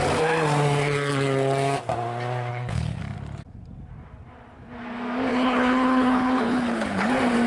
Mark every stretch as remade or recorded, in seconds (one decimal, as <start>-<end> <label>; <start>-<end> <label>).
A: 0.0-2.5 recorded; 2.5-3.0 remade; 3.0-5.3 recorded; 5.3-7.1 remade; 7.1-7.5 recorded